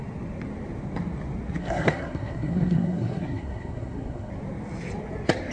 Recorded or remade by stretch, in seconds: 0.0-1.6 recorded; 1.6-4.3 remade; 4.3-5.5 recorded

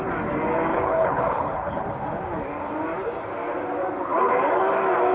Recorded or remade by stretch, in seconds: 0.0-0.7 recorded; 0.7-1.9 remade; 1.9-5.1 recorded

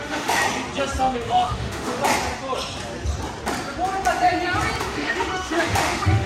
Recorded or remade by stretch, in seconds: 0.0-0.4 remade; 0.4-1.0 recorded; 1.0-2.0 remade; 2.0-4.8 recorded; 4.8-6.3 remade

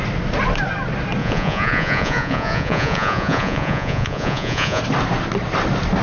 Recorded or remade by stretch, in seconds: 0.0-1.2 recorded; 1.2-4.8 remade; 4.8-6.0 recorded

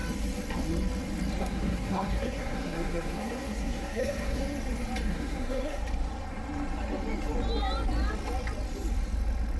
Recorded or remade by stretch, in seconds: 0.0-1.4 recorded; 1.4-4.4 remade; 4.4-5.1 recorded; 5.1-5.8 remade; 5.8-9.6 recorded

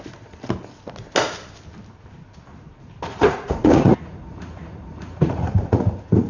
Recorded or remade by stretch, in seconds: 0.0-3.1 recorded; 3.1-6.3 remade

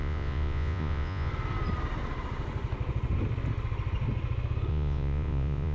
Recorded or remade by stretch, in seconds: 0.0-1.3 remade; 1.3-4.7 recorded; 4.7-5.7 remade

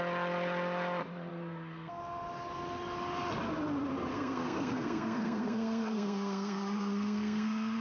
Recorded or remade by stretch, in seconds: 0.0-1.3 recorded; 1.3-2.0 remade; 2.0-4.1 recorded; 4.1-7.8 remade